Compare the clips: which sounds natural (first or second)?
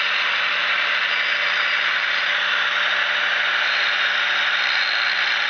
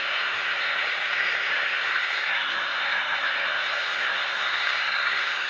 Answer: first